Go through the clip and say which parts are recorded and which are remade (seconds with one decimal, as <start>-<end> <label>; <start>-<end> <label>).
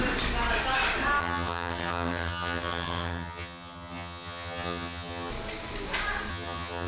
0.0-1.2 recorded; 1.2-5.3 remade; 5.3-6.3 recorded; 6.3-6.9 remade